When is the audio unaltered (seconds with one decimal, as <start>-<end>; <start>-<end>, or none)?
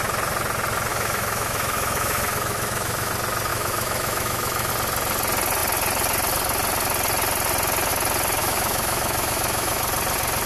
0.0-0.9; 3.1-3.5; 4.7-8.4; 9.8-10.5